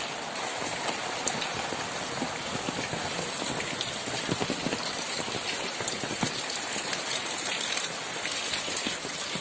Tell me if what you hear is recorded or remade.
recorded